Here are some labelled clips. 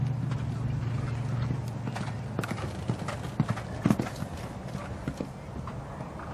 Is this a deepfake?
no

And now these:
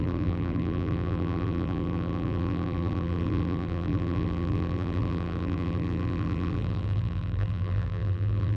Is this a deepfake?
yes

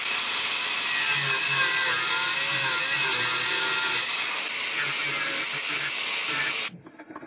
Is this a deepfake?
no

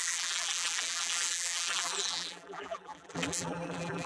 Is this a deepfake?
yes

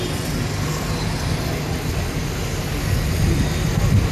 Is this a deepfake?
no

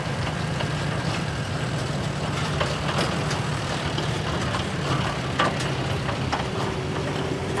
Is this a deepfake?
yes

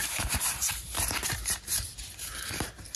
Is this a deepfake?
yes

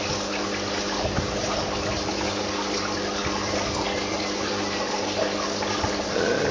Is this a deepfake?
no